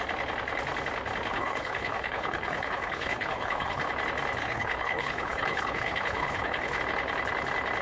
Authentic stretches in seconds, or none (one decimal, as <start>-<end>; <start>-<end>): 0.0-1.3; 3.9-4.4; 6.8-7.8